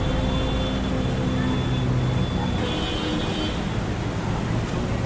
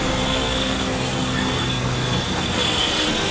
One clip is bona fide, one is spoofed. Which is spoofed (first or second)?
second